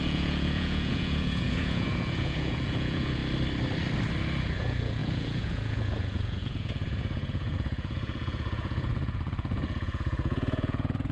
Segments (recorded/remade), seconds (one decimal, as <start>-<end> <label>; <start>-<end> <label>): 0.0-3.2 remade; 3.2-4.4 recorded; 4.4-11.1 remade